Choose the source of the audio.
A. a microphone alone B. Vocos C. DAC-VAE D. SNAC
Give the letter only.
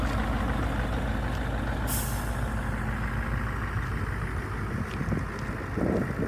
A